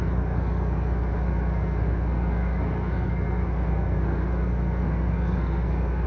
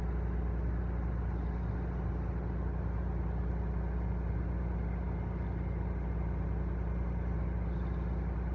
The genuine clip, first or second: second